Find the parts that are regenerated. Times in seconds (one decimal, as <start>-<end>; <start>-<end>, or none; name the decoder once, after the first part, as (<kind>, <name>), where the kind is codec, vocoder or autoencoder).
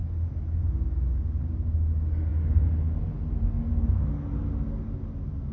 none